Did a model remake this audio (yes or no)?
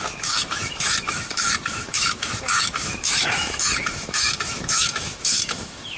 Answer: yes